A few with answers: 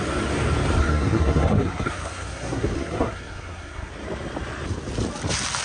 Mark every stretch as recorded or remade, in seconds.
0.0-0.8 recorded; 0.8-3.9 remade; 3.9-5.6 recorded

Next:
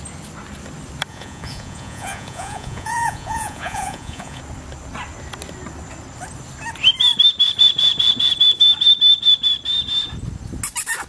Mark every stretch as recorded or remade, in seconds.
0.0-1.1 recorded; 1.1-4.4 remade; 4.4-11.1 recorded

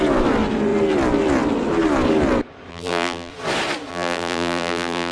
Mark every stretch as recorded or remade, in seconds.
0.0-2.7 recorded; 2.7-3.3 remade; 3.3-3.9 recorded; 3.9-5.1 remade

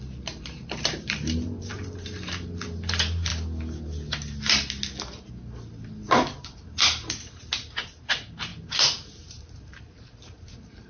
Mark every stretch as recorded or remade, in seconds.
0.0-3.3 remade; 3.3-7.3 recorded; 7.3-10.9 remade

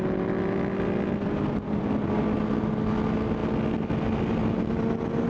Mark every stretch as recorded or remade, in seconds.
0.0-5.3 recorded

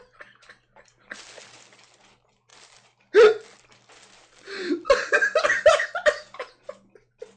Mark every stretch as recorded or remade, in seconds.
0.0-7.4 recorded

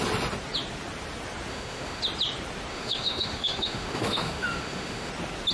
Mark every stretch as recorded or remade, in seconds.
0.0-1.5 recorded; 1.5-2.0 remade; 2.0-2.7 recorded; 2.7-5.1 remade; 5.1-5.5 recorded

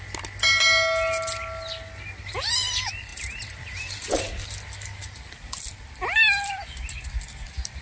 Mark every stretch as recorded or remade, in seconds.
0.0-3.1 recorded; 3.1-4.2 remade; 4.2-7.8 recorded